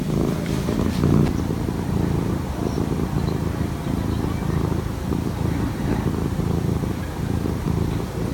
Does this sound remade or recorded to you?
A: recorded